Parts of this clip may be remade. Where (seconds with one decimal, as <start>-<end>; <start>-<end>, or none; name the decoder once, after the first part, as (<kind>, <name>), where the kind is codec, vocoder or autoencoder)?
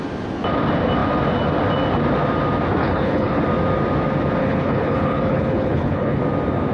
2.8-3.4 (codec, HILCodec); 4.4-6.2